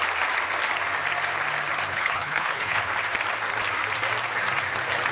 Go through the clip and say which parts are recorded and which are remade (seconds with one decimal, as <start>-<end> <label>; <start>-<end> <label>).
0.0-1.9 recorded; 1.9-2.9 remade; 2.9-5.1 recorded